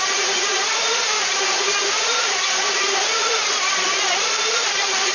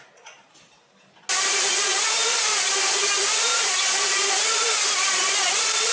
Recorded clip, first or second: second